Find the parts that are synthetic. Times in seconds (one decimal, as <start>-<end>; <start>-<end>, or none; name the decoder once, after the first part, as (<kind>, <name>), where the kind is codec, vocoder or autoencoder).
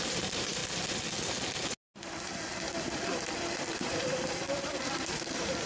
0.0-0.6 (vocoder, BigVGAN v2); 3.7-5.7